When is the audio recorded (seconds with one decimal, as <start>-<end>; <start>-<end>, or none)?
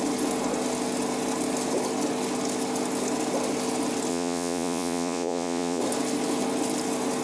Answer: 0.0-4.1; 5.8-7.2